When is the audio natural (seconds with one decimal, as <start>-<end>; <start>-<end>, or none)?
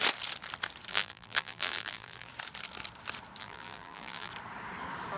0.0-0.9; 2.3-3.4; 4.3-5.2